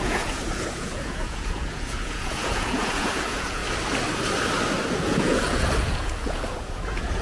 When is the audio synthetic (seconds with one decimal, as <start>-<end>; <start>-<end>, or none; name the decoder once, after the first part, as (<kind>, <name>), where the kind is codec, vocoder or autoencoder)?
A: 0.0-3.6 (vocoder, Vocos); 4.9-7.2